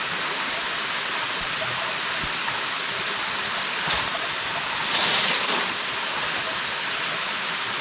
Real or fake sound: real